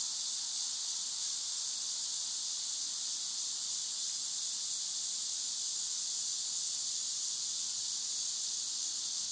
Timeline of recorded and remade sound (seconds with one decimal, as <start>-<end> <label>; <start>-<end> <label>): 0.0-9.3 recorded